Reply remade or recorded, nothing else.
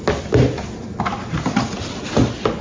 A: recorded